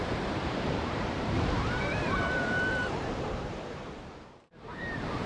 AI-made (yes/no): yes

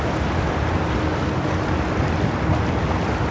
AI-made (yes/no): no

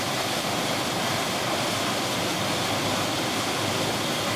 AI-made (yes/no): yes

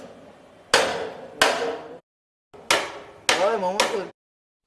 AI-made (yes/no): no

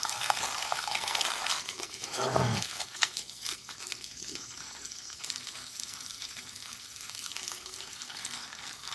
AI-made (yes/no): yes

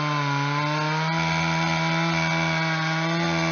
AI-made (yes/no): no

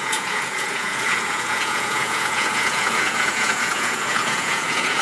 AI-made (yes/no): yes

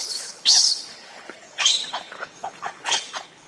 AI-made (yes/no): yes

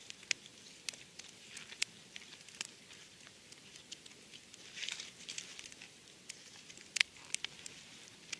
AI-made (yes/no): yes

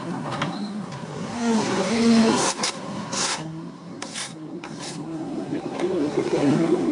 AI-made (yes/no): yes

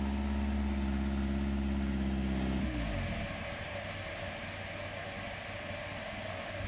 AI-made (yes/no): no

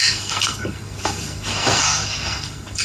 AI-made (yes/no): yes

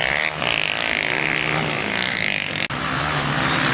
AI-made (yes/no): no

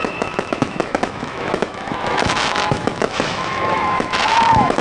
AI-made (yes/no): yes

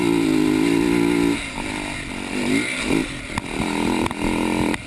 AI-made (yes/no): no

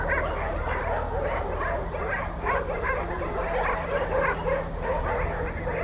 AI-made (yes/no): no